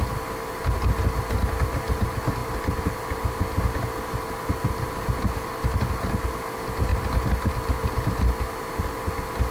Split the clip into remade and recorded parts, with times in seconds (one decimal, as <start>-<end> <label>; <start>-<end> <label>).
0.0-9.5 recorded